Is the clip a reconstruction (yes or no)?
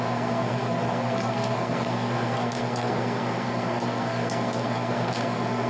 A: yes